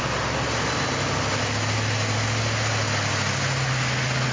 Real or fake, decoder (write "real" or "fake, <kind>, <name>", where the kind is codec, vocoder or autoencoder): real